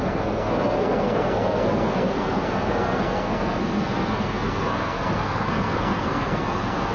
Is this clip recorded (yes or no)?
no